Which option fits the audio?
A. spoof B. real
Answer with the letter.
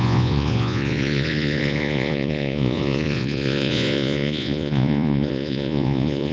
A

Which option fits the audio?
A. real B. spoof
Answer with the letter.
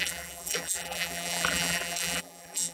B